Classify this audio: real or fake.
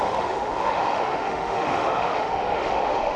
fake